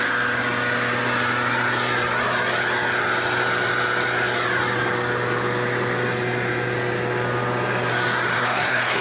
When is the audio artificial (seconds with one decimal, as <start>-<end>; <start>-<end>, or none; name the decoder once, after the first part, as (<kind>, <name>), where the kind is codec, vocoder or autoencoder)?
8.3-9.0 (codec, SNAC)